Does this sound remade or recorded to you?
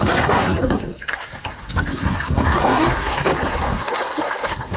remade